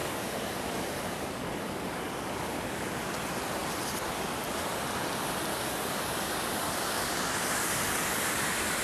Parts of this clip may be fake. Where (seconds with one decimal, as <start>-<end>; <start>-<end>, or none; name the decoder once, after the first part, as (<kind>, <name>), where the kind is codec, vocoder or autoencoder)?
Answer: 0.0-2.9 (codec, DAC); 5.5-8.8